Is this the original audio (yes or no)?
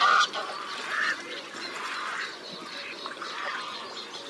no